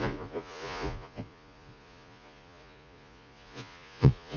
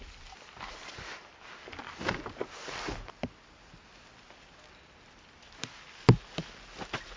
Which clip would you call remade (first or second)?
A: first